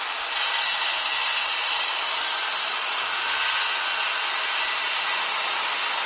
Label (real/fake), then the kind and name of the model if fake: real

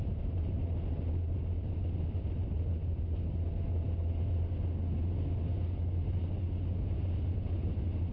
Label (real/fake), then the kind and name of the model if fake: real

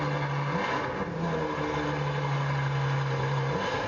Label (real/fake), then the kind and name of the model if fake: real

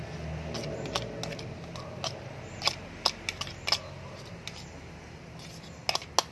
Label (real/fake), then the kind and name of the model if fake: real